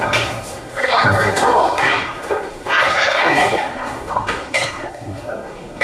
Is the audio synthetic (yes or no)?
yes